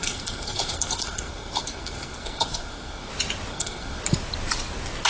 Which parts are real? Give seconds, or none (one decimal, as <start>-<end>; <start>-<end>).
3.1-3.5; 4.0-5.1